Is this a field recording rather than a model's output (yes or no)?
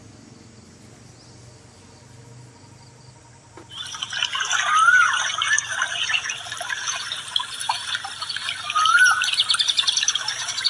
yes